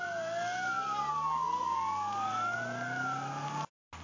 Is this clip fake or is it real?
real